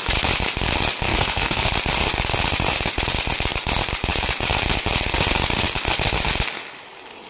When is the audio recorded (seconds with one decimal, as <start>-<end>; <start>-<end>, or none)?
0.0-1.1; 1.7-7.3